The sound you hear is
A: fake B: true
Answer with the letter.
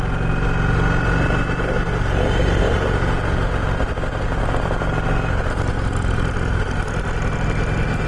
B